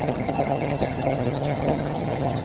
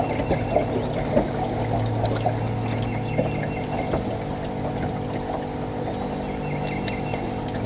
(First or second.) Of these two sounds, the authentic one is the second